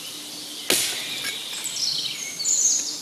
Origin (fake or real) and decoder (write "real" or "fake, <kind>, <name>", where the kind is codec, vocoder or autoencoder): real